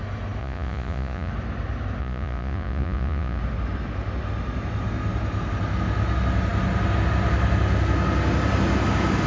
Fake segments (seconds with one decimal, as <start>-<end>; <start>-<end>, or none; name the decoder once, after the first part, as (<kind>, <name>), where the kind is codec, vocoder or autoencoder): 0.4-1.3 (vocoder, Vocos); 2.0-3.4

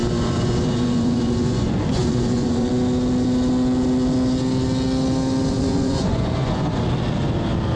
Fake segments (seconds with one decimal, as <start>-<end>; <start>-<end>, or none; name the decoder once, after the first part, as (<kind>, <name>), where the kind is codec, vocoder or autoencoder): 0.0-2.7 (vocoder, Vocos); 5.5-6.8

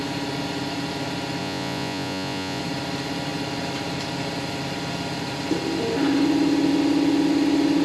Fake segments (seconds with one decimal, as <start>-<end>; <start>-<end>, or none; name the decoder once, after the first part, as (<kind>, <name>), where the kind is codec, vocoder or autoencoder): 1.4-2.6 (vocoder, Vocos)

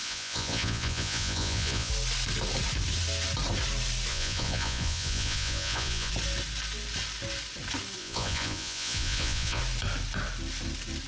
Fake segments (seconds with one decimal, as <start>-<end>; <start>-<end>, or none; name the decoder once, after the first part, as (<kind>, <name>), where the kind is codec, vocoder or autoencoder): 0.0-1.9 (vocoder, Vocos); 4.1-6.1; 8.0-9.6

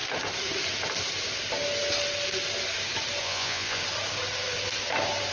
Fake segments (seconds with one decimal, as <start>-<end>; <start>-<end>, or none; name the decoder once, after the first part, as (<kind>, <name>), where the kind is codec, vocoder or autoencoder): 3.2-3.8 (vocoder, Vocos)

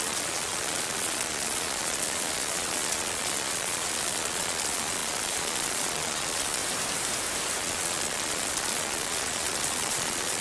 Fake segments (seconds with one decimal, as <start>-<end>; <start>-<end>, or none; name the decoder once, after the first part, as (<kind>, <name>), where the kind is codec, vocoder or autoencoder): 0.0-6.6 (vocoder, Vocos); 7.6-10.4